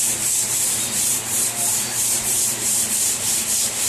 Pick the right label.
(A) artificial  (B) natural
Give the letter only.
A